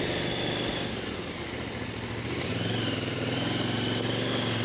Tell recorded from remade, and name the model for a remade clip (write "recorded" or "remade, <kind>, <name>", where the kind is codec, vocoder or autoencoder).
recorded